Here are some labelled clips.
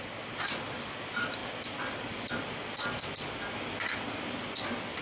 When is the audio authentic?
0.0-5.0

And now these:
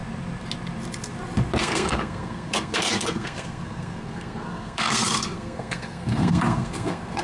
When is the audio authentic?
0.0-1.6

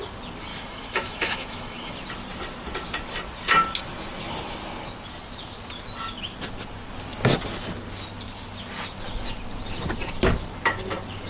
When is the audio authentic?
0.0-0.5; 1.9-11.3